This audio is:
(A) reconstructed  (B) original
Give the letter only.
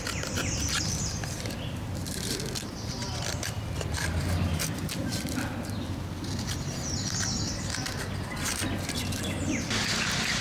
A